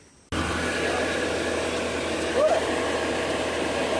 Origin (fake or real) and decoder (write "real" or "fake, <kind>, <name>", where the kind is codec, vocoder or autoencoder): real